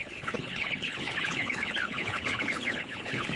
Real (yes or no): no